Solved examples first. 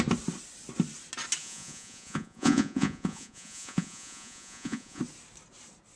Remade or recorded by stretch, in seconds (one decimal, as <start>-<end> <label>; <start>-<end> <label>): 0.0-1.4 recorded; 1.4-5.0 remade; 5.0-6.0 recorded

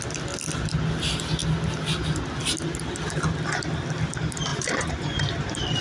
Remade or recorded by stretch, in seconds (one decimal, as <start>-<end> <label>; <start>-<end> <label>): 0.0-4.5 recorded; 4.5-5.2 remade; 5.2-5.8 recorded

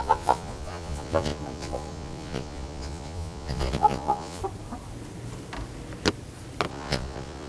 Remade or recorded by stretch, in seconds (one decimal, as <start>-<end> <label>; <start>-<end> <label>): 0.0-4.4 remade; 4.4-6.7 recorded; 6.7-7.5 remade

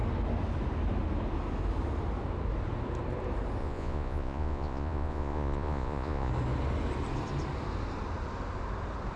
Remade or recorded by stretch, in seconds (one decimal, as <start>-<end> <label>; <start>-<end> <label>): 0.0-3.6 recorded; 3.6-6.3 remade; 6.3-9.2 recorded